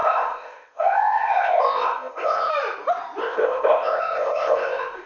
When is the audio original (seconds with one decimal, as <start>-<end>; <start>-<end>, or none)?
2.5-3.2